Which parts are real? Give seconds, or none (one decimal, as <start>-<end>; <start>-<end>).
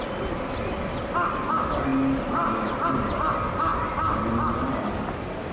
0.0-5.5